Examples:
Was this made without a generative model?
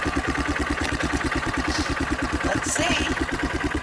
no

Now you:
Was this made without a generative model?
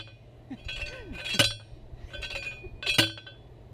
yes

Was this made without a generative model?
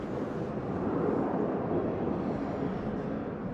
yes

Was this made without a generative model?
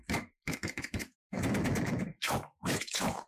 no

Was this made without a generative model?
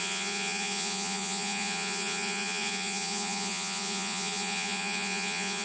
no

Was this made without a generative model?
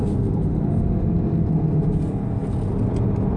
yes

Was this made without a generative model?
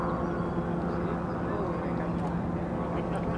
yes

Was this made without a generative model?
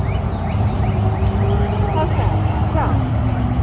yes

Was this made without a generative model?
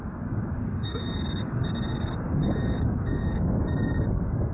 no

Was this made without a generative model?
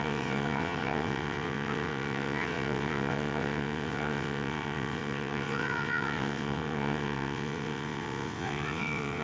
no